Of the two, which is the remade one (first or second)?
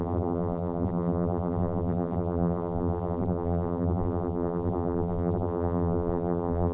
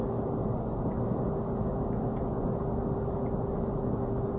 first